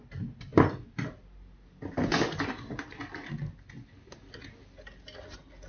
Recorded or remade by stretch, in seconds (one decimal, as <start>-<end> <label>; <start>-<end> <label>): 0.0-5.7 recorded